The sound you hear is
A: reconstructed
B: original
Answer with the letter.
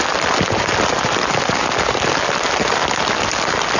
B